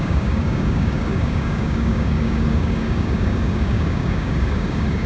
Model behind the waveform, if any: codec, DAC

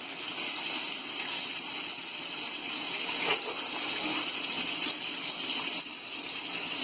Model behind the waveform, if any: none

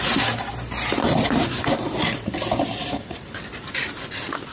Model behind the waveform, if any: none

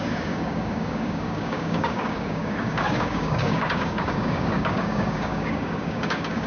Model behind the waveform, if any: codec, DAC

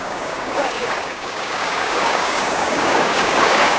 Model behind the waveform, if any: codec, DAC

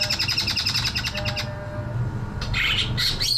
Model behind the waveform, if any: none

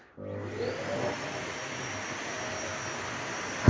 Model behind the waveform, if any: none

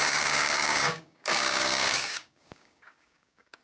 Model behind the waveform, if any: codec, DAC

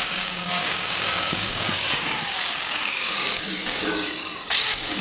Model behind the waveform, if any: codec, DAC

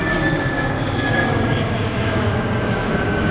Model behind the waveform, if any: codec, DAC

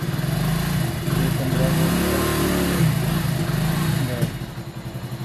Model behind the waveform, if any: none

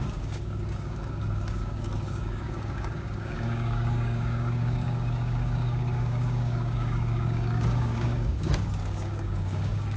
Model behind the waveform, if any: codec, DAC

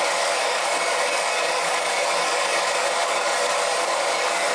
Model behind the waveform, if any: codec, DAC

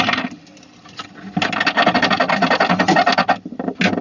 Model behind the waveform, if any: none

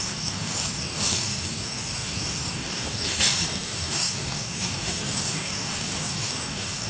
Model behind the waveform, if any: codec, DAC